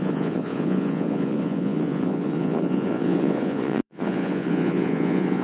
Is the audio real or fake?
fake